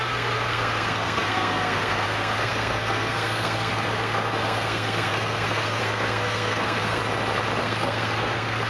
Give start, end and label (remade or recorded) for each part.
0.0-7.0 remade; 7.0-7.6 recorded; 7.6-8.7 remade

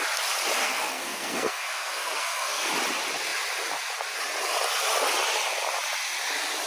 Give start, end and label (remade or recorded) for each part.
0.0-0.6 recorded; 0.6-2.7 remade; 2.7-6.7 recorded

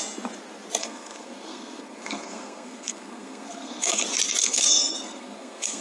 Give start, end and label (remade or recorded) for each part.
0.0-0.8 recorded; 0.8-4.0 remade; 4.0-4.4 recorded; 4.4-5.8 remade

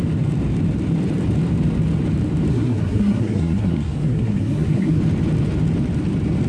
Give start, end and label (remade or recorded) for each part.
0.0-2.5 recorded; 2.5-5.0 remade; 5.0-6.5 recorded

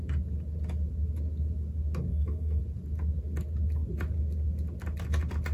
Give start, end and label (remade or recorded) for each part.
0.0-2.1 recorded; 2.1-2.6 remade; 2.6-5.5 recorded

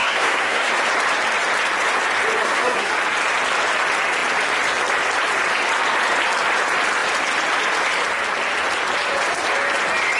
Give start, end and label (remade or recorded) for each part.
0.0-0.7 remade; 0.7-2.4 recorded; 2.4-2.9 remade; 2.9-10.2 recorded

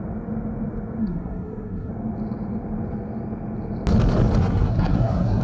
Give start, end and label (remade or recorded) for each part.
0.0-1.0 recorded; 1.0-1.9 remade; 1.9-4.4 recorded; 4.4-5.4 remade